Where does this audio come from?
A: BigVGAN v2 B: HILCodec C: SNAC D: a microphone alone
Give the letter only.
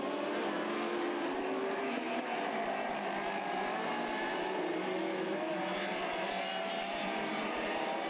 A